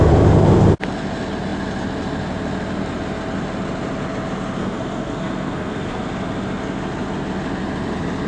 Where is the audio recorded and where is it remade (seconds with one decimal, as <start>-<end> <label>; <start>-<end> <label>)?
0.0-4.6 recorded; 4.6-6.0 remade; 6.0-8.3 recorded